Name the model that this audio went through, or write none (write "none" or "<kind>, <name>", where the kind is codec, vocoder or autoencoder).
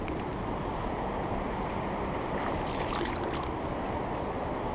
none